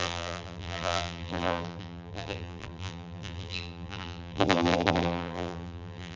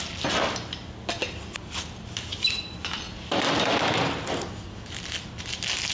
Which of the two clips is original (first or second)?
second